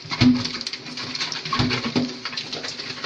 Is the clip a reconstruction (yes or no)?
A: no